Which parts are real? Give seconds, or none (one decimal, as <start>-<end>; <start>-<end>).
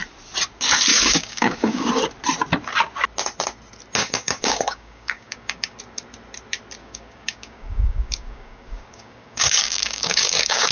0.0-0.9; 1.9-4.0; 5.8-6.8